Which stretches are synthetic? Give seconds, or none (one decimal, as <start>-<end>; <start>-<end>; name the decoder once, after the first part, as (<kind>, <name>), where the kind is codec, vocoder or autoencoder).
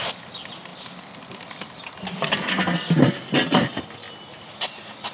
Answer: none